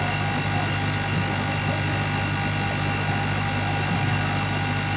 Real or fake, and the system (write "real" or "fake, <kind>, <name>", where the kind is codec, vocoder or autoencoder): real